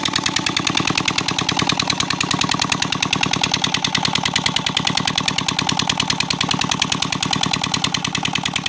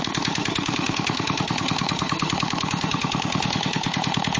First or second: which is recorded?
first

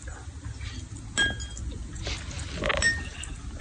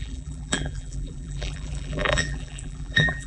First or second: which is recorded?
first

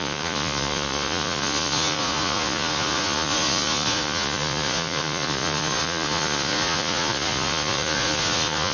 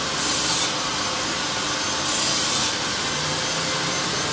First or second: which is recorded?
second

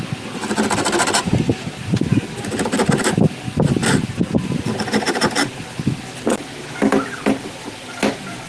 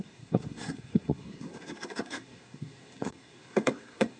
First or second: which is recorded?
first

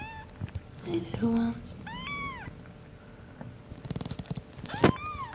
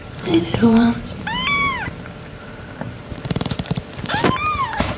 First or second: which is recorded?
first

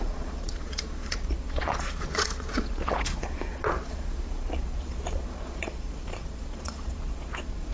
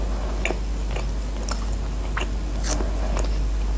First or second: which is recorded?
second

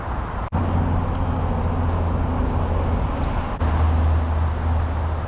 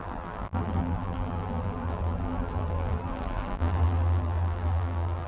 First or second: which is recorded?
first